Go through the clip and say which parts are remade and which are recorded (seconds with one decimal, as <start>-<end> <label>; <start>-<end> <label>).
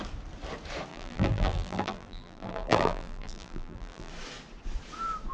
0.0-0.9 recorded; 0.9-4.1 remade; 4.1-5.3 recorded